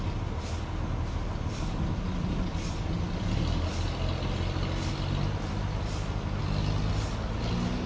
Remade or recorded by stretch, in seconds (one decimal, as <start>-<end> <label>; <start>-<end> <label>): 0.0-7.9 recorded